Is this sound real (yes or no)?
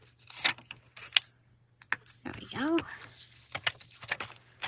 yes